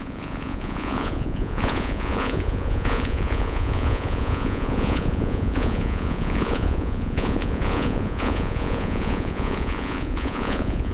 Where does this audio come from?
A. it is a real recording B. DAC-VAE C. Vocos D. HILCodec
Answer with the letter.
C